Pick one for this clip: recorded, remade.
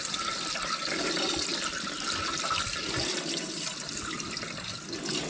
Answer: recorded